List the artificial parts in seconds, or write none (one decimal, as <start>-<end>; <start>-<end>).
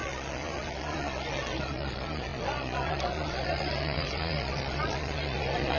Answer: 0.0-5.8